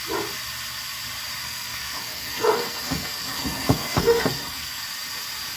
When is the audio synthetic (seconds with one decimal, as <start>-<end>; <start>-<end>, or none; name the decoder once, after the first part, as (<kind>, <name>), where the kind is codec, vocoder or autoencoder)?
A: 1.4-4.8 (codec, SNAC)